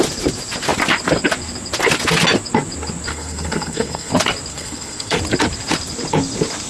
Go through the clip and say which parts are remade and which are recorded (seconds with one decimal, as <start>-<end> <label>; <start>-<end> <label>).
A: 0.0-3.1 recorded; 3.1-4.1 remade; 4.1-4.5 recorded; 4.5-5.2 remade; 5.2-6.7 recorded